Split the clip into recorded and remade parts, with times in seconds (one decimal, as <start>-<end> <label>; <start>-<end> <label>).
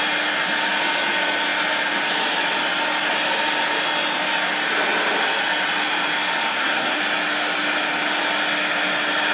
0.0-6.5 recorded; 6.5-7.0 remade; 7.0-9.3 recorded